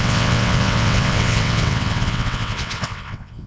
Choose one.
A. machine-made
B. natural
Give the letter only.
A